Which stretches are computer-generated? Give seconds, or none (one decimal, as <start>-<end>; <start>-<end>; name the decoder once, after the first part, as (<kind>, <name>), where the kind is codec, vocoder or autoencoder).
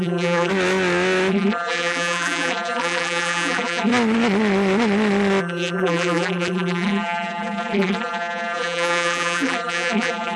0.0-0.5 (vocoder, BigVGAN v2); 1.3-3.9; 5.4-10.4